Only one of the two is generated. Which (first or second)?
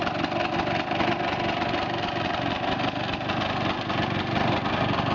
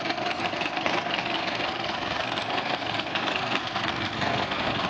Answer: second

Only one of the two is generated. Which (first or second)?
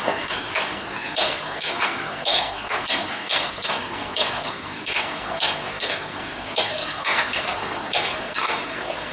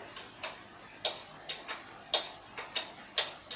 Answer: first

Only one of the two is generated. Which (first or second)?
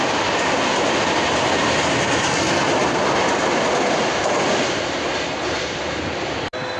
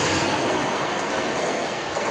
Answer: second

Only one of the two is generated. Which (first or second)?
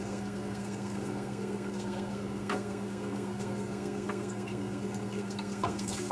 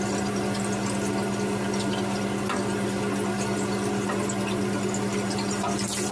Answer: first